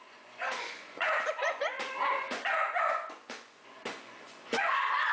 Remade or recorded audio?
remade